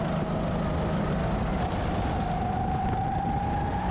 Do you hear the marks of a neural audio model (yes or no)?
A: no